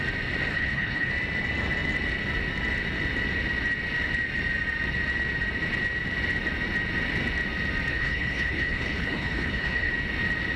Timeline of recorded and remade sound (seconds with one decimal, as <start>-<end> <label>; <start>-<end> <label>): 0.0-0.5 recorded; 0.5-1.1 remade; 1.1-7.9 recorded; 7.9-9.9 remade; 9.9-10.6 recorded

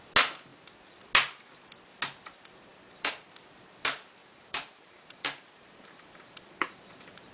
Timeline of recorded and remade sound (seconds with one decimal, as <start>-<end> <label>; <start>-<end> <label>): 0.0-2.7 recorded; 2.7-3.3 remade; 3.3-4.2 recorded; 4.2-7.3 remade

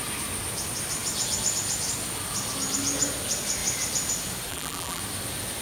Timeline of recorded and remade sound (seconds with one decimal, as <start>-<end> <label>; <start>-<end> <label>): 0.0-4.5 recorded; 4.5-5.0 remade; 5.0-5.6 recorded

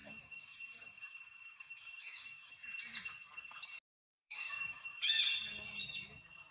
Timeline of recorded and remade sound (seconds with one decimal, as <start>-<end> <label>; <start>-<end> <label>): 0.0-2.5 remade; 2.5-4.1 recorded; 4.1-5.2 remade; 5.2-6.5 recorded